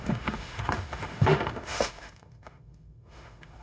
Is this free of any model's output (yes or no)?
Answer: no